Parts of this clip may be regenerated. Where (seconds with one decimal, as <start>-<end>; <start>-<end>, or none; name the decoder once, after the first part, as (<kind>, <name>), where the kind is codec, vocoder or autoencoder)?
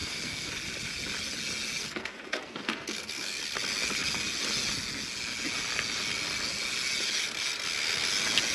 0.0-0.5 (codec, SNAC); 1.8-3.4